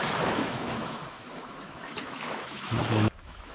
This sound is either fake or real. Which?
fake